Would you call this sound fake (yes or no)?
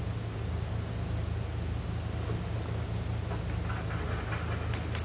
no